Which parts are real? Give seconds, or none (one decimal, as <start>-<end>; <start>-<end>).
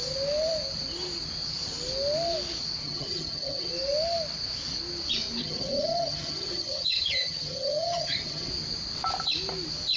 0.0-2.8; 3.7-5.4; 8.5-10.0